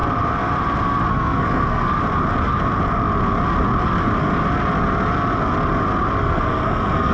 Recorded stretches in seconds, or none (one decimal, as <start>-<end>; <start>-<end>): 0.0-1.1; 1.9-6.2